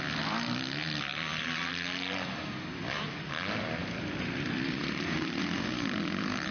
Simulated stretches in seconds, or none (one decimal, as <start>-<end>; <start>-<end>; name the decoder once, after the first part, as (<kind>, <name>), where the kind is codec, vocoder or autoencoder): 3.8-5.4 (vocoder, BigVGAN v2)